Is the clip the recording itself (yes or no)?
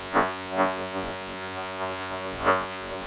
no